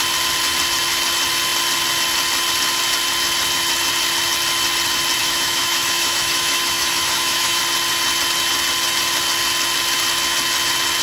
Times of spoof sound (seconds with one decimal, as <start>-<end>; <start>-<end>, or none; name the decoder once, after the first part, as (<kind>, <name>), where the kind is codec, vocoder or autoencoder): 5.2-7.6 (autoencoder, DAC-VAE)